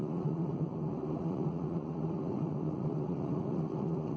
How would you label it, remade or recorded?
remade